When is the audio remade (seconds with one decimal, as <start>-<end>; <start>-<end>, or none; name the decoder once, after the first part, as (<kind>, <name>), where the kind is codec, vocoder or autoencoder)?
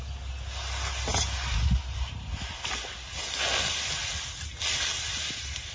none